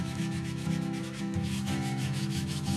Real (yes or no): no